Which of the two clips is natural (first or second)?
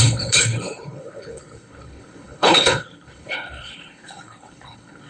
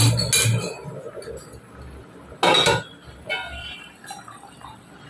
second